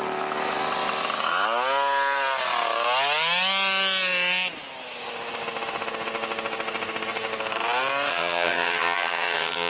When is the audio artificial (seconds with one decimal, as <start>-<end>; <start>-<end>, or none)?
8.1-9.7